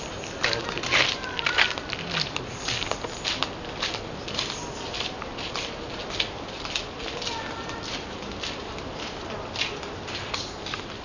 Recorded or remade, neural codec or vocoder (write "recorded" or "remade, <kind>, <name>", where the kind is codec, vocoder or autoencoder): recorded